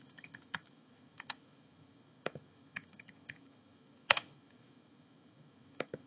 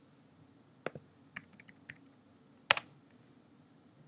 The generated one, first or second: first